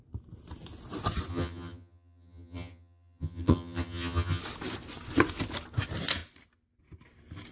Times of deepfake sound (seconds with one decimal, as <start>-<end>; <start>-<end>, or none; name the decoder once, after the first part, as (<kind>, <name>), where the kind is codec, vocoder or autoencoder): 1.3-4.4 (vocoder, HiFi-GAN)